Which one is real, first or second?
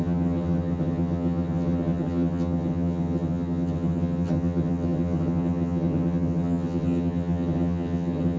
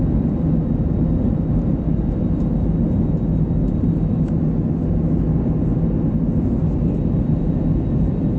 second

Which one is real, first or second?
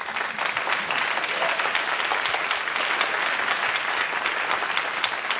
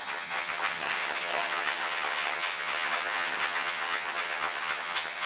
first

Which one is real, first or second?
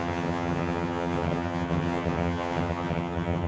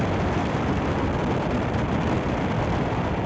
second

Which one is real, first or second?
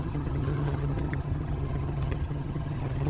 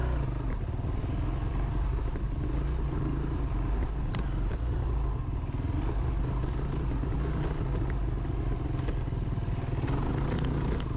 second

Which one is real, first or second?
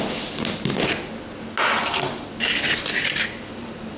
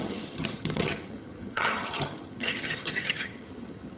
first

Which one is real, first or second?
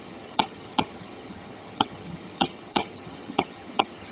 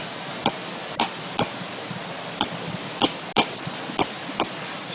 second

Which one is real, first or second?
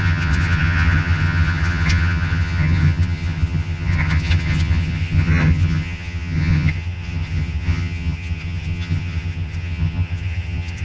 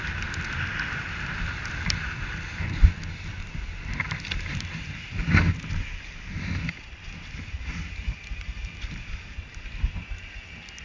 second